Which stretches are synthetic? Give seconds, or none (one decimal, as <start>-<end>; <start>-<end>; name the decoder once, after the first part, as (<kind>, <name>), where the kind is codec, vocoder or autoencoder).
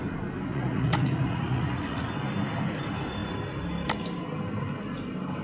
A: 0.5-2.1 (vocoder, Vocos)